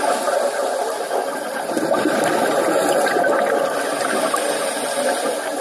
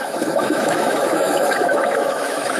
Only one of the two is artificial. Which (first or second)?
second